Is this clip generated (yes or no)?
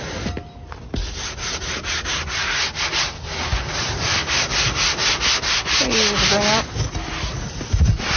no